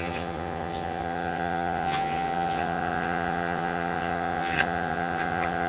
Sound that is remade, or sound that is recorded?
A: remade